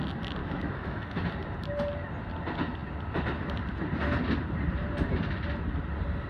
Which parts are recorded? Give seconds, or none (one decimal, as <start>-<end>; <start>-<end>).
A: 0.0-0.4; 1.2-6.3